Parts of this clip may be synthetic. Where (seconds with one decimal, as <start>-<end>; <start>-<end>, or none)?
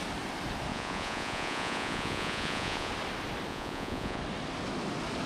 0.7-2.9; 3.5-4.2